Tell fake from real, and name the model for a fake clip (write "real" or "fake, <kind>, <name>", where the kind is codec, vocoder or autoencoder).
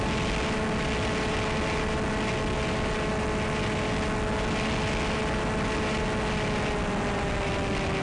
real